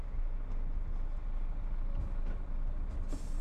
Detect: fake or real real